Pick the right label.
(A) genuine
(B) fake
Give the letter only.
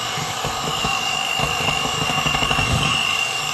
B